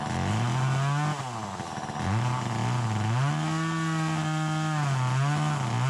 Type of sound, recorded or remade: recorded